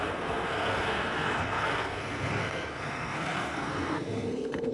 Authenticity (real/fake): fake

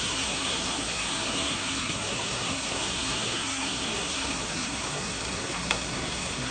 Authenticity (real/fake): fake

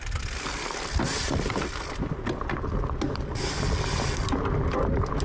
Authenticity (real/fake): real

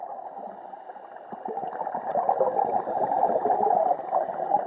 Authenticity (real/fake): real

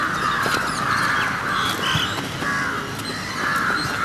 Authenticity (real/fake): real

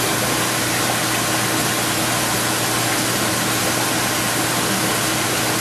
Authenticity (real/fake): real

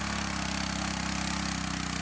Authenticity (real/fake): real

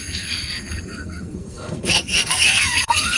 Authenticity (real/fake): fake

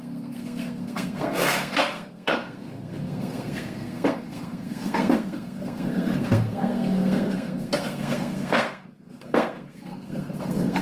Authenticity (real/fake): fake